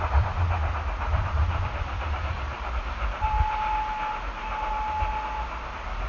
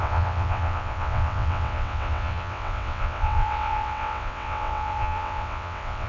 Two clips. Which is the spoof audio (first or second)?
second